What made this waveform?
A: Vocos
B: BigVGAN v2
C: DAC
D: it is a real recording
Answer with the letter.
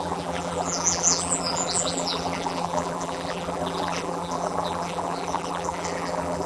B